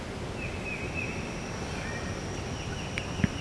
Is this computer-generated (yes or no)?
no